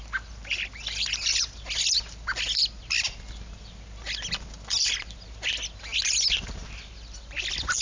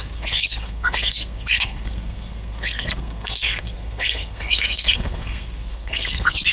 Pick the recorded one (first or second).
first